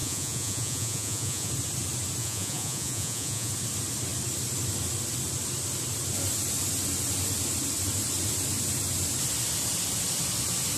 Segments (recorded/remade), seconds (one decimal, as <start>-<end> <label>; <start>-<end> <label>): 0.0-1.5 remade; 1.5-2.2 recorded; 2.2-3.5 remade; 3.5-10.8 recorded